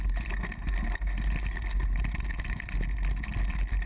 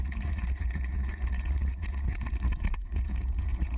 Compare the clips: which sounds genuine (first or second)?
first